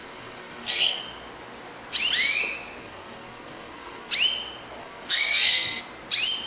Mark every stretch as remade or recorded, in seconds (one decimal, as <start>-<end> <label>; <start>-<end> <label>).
0.0-1.0 remade; 1.0-2.8 recorded; 2.8-4.1 remade; 4.1-4.8 recorded; 4.8-5.8 remade; 5.8-6.5 recorded